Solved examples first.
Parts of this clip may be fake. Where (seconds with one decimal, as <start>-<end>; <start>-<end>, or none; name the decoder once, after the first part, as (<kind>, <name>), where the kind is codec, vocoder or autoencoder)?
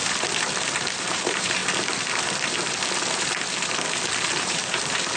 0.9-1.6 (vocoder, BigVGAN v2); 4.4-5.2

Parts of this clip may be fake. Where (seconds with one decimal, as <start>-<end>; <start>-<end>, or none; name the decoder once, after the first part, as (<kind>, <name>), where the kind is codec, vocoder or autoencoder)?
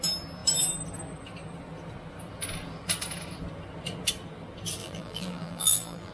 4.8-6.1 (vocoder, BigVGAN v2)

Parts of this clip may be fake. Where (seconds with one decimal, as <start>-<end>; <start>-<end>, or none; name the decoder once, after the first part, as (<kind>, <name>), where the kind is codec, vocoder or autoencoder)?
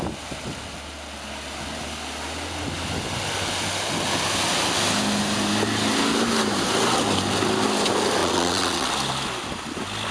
8.2-8.9 (vocoder, WaveNeXt)